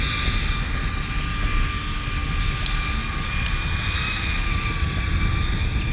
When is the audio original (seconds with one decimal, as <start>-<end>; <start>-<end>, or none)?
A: 0.0-5.9